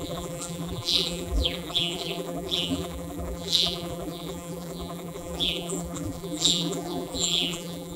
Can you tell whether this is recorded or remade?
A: remade